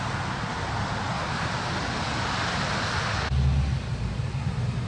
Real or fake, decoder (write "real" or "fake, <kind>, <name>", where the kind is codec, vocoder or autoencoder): real